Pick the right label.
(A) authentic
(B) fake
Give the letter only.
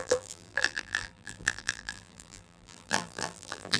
B